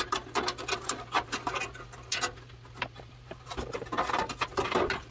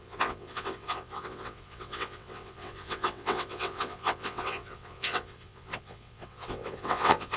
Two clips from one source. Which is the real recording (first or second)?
first